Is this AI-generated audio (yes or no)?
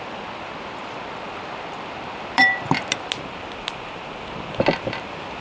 yes